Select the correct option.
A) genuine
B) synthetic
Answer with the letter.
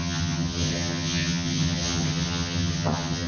B